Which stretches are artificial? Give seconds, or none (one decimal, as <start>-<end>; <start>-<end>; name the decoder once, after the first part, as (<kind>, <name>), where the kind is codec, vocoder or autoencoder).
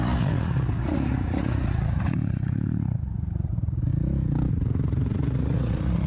0.0-3.9 (vocoder, Vocos); 4.5-6.1